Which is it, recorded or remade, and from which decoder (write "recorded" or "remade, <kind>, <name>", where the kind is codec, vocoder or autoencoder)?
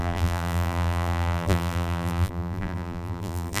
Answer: remade, vocoder, BigVGAN v2